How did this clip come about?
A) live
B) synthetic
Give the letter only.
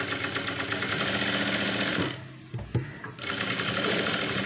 A